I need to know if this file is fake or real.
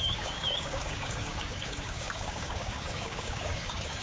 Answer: fake